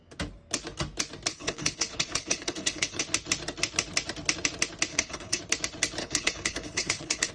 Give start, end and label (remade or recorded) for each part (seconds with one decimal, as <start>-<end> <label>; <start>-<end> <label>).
0.0-1.3 recorded; 1.3-3.0 remade; 3.0-4.9 recorded; 4.9-5.4 remade; 5.4-6.0 recorded; 6.0-7.3 remade